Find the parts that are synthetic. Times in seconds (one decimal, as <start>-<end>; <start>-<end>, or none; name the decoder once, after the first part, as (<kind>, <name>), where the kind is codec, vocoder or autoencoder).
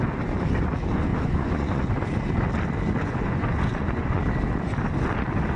1.1-1.9 (vocoder, Vocos); 3.0-4.2